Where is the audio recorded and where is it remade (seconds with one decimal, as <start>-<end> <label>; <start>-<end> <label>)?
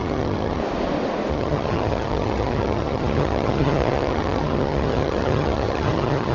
0.0-0.6 remade; 0.6-1.3 recorded; 1.3-6.3 remade